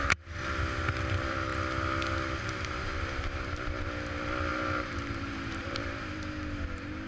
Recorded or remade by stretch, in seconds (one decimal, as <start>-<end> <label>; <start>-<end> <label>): 0.0-4.5 recorded; 4.5-6.1 remade; 6.1-7.1 recorded